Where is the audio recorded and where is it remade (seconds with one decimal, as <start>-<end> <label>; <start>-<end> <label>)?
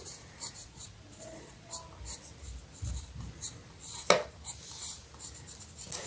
0.0-0.6 recorded; 0.6-1.7 remade; 1.7-6.1 recorded